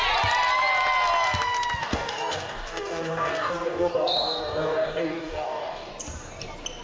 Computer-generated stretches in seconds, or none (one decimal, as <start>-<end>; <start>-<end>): 1.8-5.9